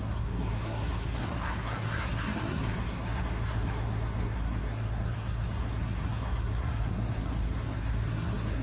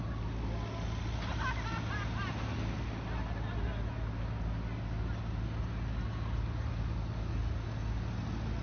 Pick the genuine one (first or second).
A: second